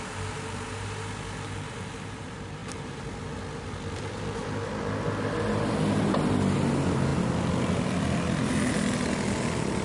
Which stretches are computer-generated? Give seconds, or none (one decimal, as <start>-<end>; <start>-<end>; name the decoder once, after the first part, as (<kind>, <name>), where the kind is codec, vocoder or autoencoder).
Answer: none